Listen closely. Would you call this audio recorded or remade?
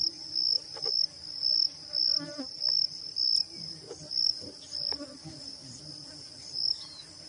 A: recorded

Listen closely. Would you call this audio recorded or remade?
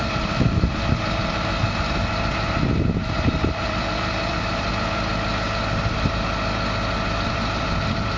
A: remade